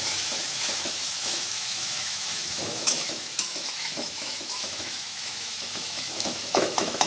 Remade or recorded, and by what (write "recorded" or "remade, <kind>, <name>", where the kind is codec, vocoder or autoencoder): remade, autoencoder, DAC-VAE